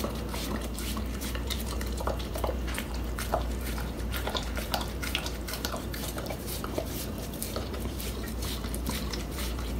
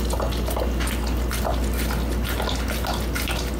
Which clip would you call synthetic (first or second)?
first